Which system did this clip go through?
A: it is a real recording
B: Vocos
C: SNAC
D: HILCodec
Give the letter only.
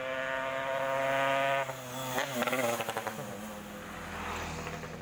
A